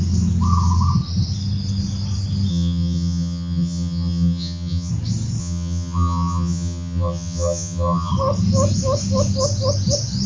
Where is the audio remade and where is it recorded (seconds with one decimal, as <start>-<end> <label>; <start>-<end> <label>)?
0.0-2.5 recorded; 2.5-4.9 remade; 4.9-5.4 recorded; 5.4-8.1 remade; 8.1-10.3 recorded